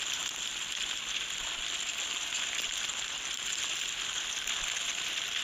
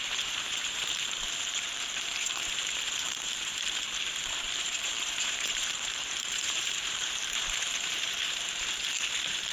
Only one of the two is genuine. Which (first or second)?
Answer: first